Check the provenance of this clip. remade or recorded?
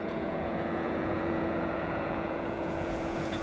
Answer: remade